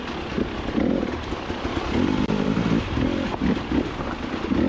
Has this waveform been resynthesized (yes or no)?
no